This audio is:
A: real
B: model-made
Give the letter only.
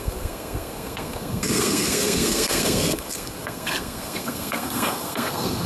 B